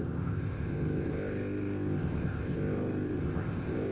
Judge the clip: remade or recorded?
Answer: remade